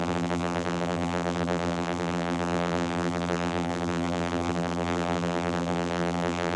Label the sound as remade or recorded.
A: remade